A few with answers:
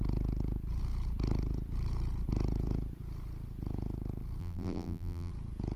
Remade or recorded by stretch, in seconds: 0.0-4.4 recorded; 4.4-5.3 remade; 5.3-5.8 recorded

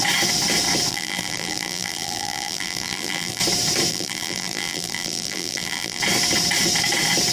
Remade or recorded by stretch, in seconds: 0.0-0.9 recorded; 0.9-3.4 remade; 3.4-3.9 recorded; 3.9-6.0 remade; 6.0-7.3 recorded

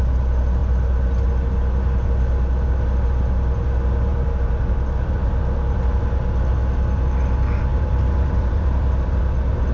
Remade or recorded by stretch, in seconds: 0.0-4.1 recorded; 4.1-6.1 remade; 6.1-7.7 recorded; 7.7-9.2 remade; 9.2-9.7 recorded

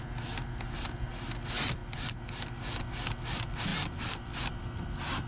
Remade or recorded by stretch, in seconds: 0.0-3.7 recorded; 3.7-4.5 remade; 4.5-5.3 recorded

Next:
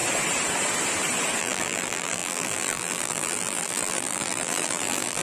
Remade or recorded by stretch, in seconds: 0.0-1.4 recorded; 1.4-5.2 remade

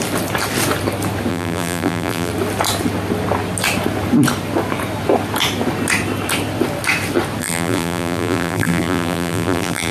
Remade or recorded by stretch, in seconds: 0.0-1.3 recorded; 1.3-2.3 remade; 2.3-7.4 recorded; 7.4-9.9 remade

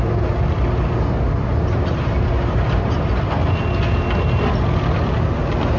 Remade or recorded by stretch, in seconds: 0.0-1.5 recorded; 1.5-3.1 remade; 3.1-5.8 recorded